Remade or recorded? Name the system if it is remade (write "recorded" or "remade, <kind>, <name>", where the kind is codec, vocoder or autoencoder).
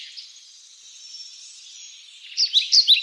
recorded